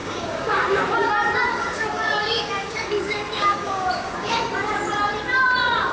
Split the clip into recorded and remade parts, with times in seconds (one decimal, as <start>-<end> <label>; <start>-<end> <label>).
0.0-1.1 remade; 1.1-1.5 recorded; 1.5-4.4 remade; 4.4-5.9 recorded